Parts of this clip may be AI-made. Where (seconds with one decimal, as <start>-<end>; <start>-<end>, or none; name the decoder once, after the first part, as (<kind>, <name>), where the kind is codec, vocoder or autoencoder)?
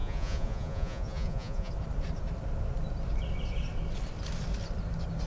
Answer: 0.0-1.7 (vocoder, Vocos)